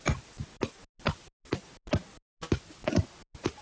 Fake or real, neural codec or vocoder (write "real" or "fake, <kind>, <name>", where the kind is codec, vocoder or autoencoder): real